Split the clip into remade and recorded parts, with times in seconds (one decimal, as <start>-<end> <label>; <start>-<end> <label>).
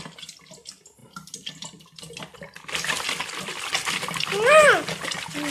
0.0-1.0 recorded; 1.0-3.7 remade; 3.7-5.5 recorded